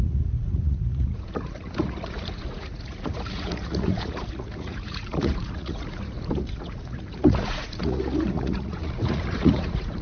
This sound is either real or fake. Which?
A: fake